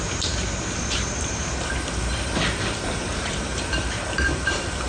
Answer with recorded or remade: remade